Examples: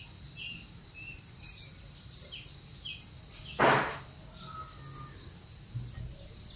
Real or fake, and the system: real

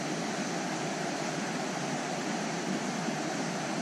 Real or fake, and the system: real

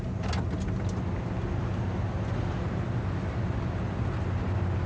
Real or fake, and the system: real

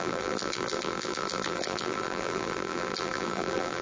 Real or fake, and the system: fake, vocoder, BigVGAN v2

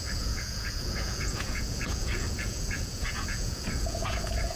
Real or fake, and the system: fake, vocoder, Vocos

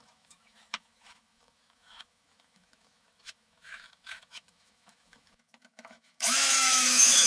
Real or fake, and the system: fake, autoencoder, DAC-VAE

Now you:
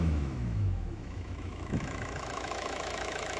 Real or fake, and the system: fake, autoencoder, DAC-VAE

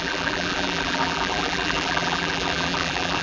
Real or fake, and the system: fake, vocoder, BigVGAN v2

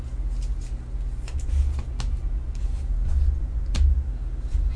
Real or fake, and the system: real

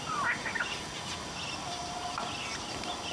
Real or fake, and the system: real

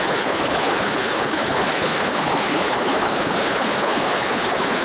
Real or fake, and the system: fake, codec, HILCodec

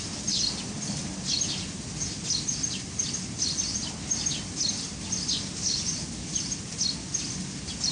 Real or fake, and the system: real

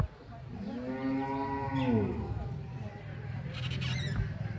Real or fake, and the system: real